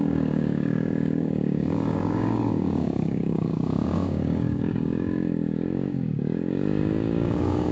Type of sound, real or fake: fake